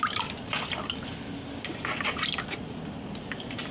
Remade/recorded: recorded